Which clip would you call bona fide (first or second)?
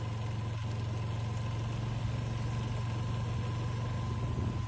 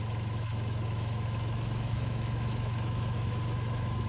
first